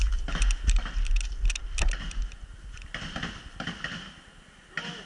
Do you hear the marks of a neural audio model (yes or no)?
no